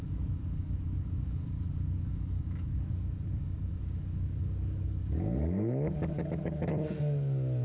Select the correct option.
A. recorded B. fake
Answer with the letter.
B